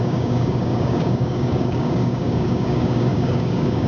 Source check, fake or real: fake